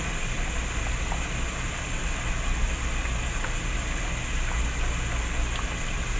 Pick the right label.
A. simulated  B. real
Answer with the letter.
B